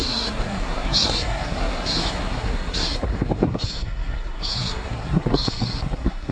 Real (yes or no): no